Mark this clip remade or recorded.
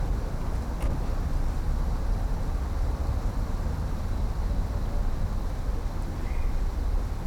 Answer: recorded